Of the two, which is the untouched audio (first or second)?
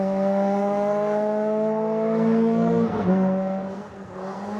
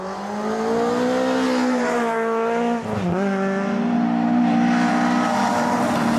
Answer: second